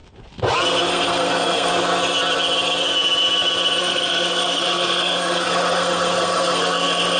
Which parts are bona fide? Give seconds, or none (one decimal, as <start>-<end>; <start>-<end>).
0.0-0.9; 1.7-3.8